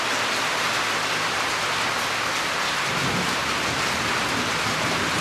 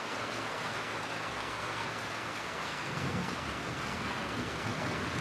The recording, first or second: first